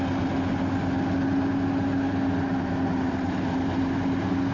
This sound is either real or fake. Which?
real